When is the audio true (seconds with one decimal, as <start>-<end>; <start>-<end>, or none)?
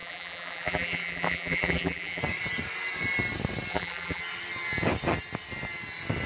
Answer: 2.2-3.7; 4.2-6.3